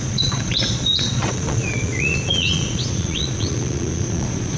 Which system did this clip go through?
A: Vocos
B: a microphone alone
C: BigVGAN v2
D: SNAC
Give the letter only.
A